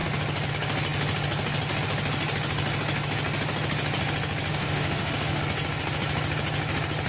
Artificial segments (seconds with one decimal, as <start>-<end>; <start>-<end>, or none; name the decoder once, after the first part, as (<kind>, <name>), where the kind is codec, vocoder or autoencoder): 4.5-5.4 (autoencoder, DAC-VAE)